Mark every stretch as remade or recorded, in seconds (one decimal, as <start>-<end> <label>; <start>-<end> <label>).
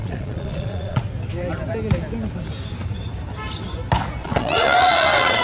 0.0-1.0 remade; 1.0-4.2 recorded; 4.2-5.4 remade